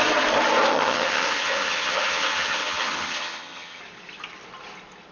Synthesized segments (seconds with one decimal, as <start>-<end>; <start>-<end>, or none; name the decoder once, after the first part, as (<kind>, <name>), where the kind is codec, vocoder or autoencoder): 0.7-3.8 (vocoder, HiFi-GAN)